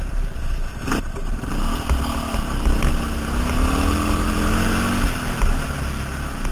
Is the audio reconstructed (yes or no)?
no